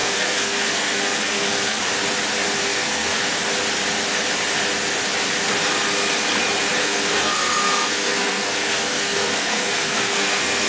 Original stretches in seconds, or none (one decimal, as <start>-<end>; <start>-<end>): 1.8-2.7; 3.2-6.8